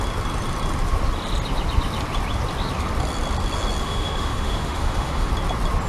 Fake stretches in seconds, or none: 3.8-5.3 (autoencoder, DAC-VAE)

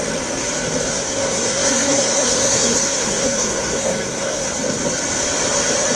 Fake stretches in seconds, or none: 0.9-4.5 (codec, SNAC)

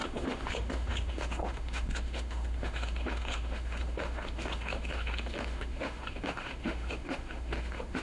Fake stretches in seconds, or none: 0.0-8.0 (autoencoder, DAC-VAE)

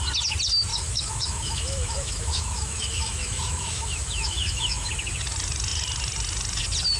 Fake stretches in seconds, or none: 0.7-4.9 (autoencoder, DAC-VAE)

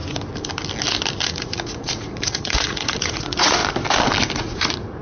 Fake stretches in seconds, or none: 1.3-3.6 (vocoder, Vocos); 4.4-5.0

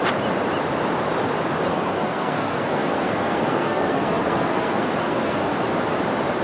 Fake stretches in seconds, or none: 1.7-5.5 (codec, SNAC)

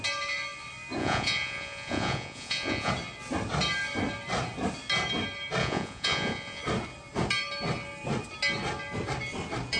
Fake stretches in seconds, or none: 1.0-2.9 (vocoder, Vocos); 5.6-6.6